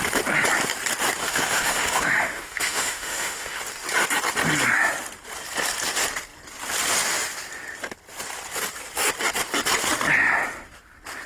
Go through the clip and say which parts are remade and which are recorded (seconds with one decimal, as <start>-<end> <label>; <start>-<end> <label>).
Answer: 0.0-1.2 recorded; 1.2-3.6 remade; 3.6-11.3 recorded